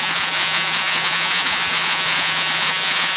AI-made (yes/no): yes